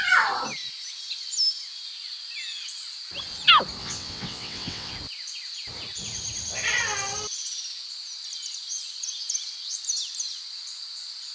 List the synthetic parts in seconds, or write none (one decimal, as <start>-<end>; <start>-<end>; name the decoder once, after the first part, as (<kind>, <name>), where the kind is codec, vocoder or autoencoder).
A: 3.8-4.9 (vocoder, WaveNeXt)